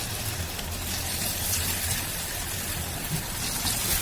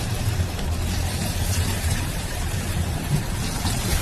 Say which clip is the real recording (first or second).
first